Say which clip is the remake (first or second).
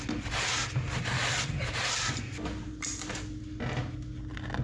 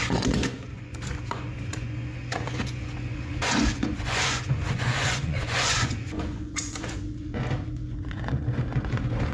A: second